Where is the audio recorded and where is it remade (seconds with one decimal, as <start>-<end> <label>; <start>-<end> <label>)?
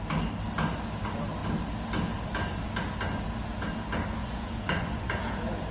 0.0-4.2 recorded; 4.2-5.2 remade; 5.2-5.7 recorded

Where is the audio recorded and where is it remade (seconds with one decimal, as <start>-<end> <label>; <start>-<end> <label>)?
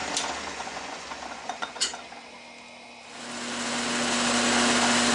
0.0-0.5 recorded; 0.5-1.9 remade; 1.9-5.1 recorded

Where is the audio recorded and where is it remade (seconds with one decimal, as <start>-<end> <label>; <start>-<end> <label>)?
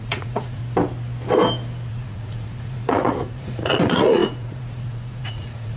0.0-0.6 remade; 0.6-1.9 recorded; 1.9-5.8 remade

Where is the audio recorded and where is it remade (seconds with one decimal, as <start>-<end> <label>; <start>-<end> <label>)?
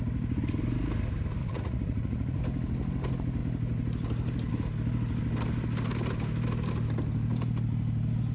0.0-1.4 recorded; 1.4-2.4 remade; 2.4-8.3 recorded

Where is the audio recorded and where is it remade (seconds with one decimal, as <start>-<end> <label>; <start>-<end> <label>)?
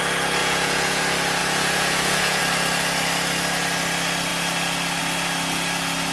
0.0-0.4 recorded; 0.4-1.0 remade; 1.0-1.4 recorded; 1.4-2.4 remade; 2.4-6.1 recorded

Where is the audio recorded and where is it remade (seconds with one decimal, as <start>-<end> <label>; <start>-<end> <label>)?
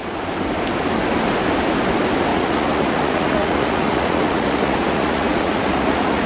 0.0-2.3 recorded; 2.3-6.3 remade